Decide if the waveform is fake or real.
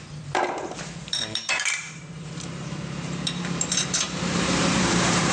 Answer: fake